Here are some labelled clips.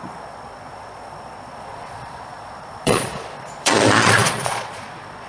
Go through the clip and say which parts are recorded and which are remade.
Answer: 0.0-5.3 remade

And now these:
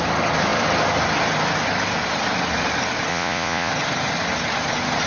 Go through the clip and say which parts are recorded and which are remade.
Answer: 0.0-3.1 recorded; 3.1-3.7 remade; 3.7-5.1 recorded

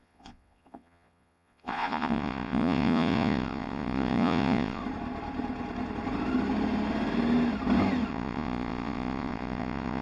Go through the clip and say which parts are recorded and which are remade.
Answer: 0.0-4.8 remade; 4.8-8.1 recorded; 8.1-10.0 remade

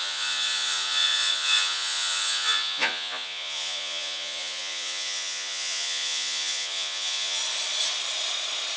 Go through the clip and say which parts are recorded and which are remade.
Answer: 0.0-7.4 remade; 7.4-8.8 recorded

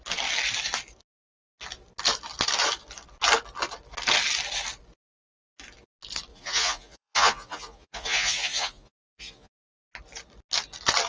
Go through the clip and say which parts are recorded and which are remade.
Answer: 0.0-6.3 recorded; 6.3-9.7 remade; 9.7-11.1 recorded

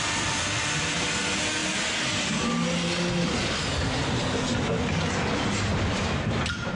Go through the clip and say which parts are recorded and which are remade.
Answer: 0.0-6.8 recorded

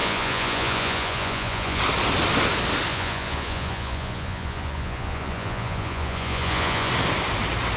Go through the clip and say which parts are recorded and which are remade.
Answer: 0.0-1.8 remade; 1.8-2.9 recorded; 2.9-6.9 remade; 6.9-7.8 recorded